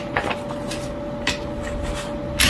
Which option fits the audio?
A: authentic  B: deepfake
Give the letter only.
A